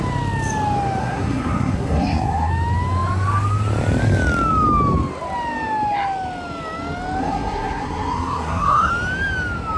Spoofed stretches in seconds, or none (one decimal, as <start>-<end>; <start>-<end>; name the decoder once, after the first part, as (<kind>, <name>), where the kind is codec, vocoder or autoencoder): 1.0-2.5 (codec, SNAC); 7.2-8.9